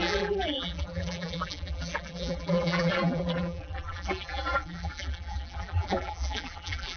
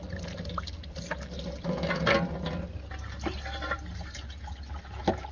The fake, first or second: first